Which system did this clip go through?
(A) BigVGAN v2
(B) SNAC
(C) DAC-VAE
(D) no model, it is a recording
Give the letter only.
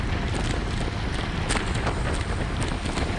D